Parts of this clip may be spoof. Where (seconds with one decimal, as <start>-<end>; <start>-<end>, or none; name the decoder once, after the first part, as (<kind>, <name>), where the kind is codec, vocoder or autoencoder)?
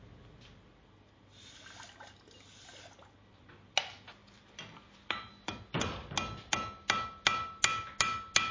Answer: none